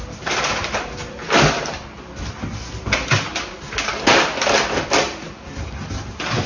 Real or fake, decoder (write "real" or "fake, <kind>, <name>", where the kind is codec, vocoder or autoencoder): real